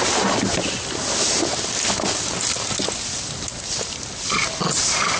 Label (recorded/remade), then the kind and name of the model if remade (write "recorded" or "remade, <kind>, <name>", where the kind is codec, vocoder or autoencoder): recorded